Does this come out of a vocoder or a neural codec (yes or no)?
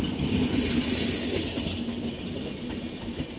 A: no